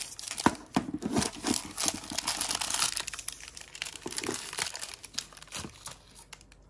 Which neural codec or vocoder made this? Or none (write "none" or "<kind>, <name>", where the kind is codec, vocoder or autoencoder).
none